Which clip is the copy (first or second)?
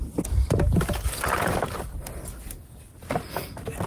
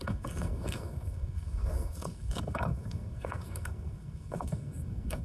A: second